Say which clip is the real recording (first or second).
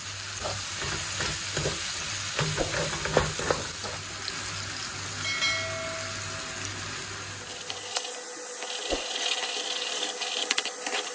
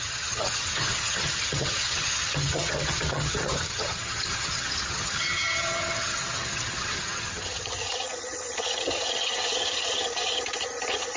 first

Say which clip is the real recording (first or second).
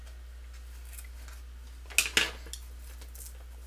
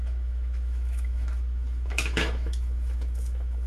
first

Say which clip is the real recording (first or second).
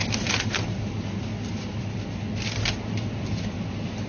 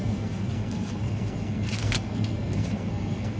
first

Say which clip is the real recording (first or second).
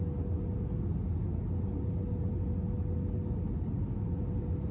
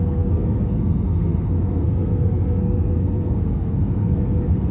first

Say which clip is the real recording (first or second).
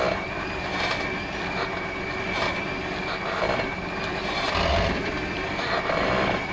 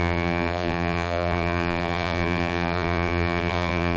first